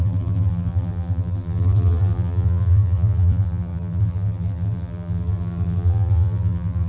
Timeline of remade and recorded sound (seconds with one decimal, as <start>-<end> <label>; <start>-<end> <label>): 0.0-6.9 remade

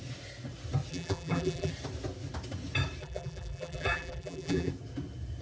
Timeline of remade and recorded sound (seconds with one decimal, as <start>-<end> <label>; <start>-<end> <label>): 0.0-0.9 recorded; 0.9-1.7 remade; 1.7-3.0 recorded; 3.0-4.7 remade; 4.7-5.4 recorded

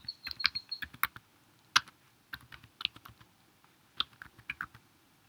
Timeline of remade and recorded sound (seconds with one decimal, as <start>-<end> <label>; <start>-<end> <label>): 0.0-5.3 recorded

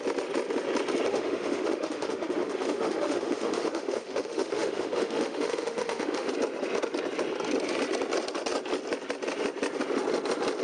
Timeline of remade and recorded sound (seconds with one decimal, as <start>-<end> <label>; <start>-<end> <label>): 0.0-1.1 recorded; 1.1-6.3 remade; 6.3-10.6 recorded

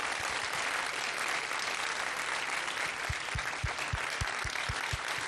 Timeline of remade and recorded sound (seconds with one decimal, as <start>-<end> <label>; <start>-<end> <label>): 0.0-5.3 recorded